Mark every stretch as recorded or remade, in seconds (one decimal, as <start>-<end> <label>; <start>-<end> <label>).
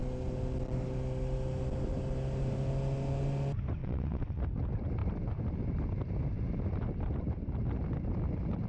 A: 0.0-3.8 recorded; 3.8-4.4 remade; 4.4-8.7 recorded